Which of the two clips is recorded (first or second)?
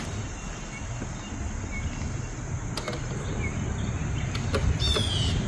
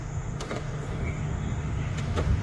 first